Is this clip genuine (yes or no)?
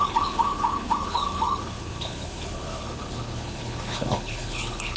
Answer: no